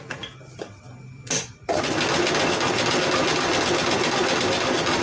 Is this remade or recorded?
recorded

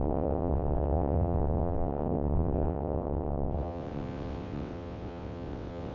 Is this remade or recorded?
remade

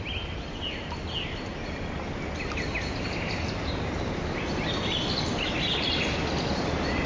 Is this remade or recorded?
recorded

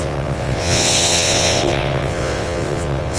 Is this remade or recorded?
remade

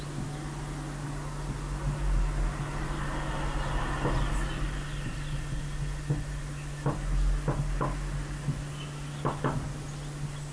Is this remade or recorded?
recorded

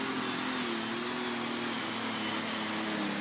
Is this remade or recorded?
recorded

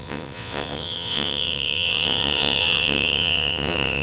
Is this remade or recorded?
remade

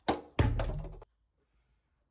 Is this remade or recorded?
recorded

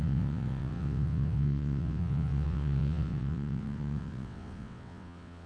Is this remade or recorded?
remade